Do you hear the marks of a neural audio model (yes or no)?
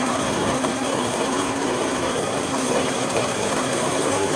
yes